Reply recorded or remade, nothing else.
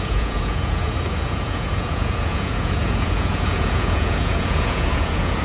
remade